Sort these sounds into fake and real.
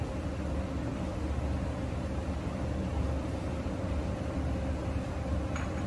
real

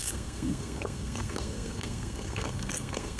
fake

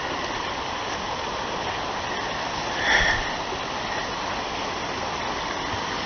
real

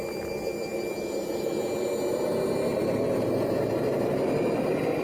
fake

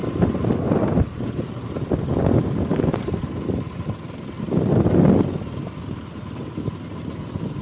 real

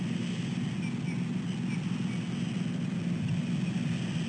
real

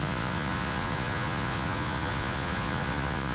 fake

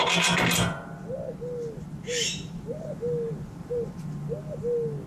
real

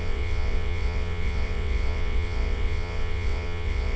fake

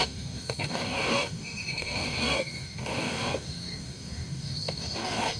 fake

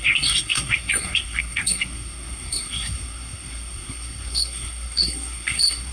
fake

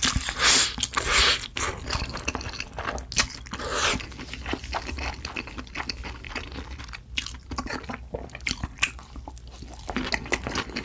real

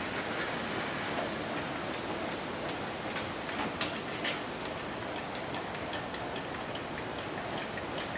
real